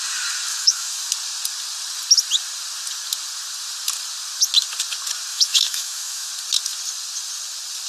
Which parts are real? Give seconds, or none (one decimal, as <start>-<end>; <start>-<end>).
0.0-0.5; 1.1-5.3; 6.3-7.9